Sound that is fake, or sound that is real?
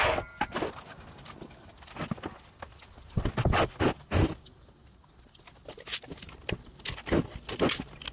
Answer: real